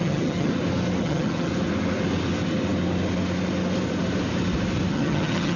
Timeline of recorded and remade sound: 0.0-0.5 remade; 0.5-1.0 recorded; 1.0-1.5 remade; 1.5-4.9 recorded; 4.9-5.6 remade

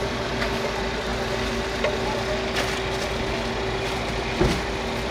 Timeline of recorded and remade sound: 0.0-5.1 recorded

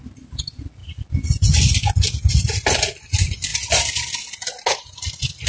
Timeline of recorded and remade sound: 0.0-5.5 recorded

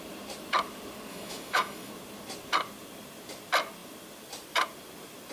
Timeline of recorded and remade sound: 0.0-1.1 recorded; 1.1-1.9 remade; 1.9-5.3 recorded